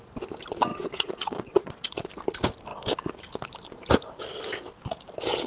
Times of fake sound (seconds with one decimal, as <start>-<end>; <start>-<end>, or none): 0.7-2.1